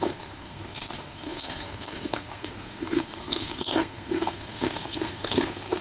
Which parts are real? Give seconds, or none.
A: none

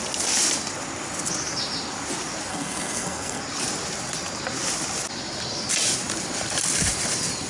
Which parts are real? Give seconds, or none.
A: 0.0-2.5; 3.4-7.5

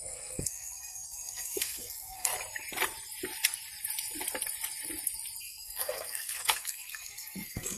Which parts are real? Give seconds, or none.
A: 2.3-5.4

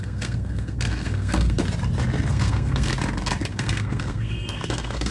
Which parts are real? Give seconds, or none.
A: 1.6-2.3; 2.9-3.5

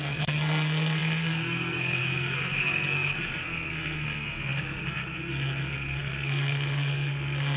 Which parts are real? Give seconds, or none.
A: none